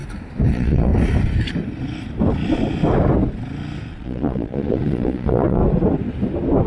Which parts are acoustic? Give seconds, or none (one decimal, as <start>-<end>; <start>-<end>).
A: 0.0-0.5; 0.9-3.9; 5.6-6.7